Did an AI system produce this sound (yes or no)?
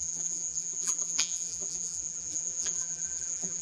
yes